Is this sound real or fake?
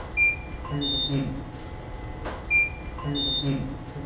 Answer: real